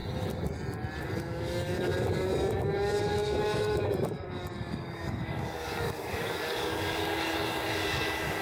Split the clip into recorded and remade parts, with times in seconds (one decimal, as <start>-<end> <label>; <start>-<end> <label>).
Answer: 0.0-1.0 recorded; 1.0-8.4 remade

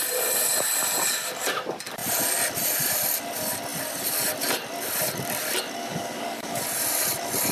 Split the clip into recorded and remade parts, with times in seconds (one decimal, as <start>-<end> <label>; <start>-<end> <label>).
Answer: 0.0-5.8 recorded; 5.8-6.6 remade; 6.6-7.5 recorded

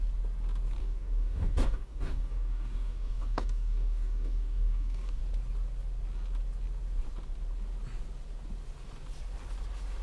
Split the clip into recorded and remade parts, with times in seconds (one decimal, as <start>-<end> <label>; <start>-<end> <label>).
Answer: 0.0-0.8 recorded; 0.8-5.2 remade; 5.2-10.0 recorded

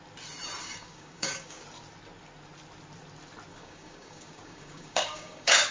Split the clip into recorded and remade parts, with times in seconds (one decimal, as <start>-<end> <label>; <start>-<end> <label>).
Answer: 0.0-0.6 recorded; 0.6-1.6 remade; 1.6-3.5 recorded; 3.5-5.7 remade

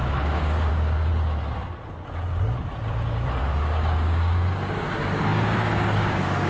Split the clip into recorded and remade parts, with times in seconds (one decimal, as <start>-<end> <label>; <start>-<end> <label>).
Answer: 0.0-1.1 remade; 1.1-3.4 recorded; 3.4-6.5 remade

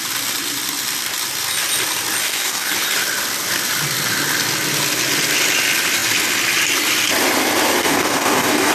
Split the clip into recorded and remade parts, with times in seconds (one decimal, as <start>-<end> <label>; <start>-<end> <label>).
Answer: 0.0-2.2 recorded; 2.2-2.7 remade; 2.7-7.8 recorded; 7.8-8.7 remade